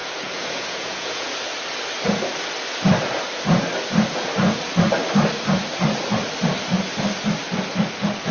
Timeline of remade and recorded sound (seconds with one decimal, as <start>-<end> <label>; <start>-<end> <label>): 0.0-1.3 remade; 1.3-8.3 recorded